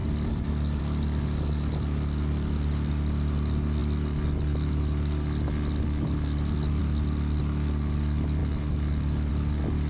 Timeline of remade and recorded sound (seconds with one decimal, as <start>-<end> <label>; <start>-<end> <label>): 0.0-0.8 remade; 0.8-9.9 recorded